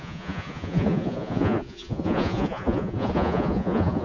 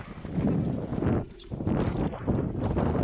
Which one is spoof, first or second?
first